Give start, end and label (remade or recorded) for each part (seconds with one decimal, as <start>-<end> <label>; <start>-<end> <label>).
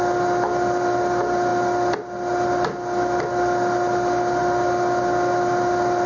0.0-6.1 recorded